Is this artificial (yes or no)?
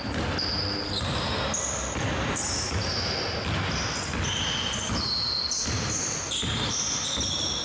no